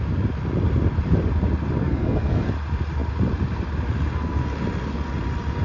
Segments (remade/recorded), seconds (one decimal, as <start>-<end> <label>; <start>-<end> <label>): 0.0-1.8 recorded; 1.8-2.5 remade; 2.5-5.6 recorded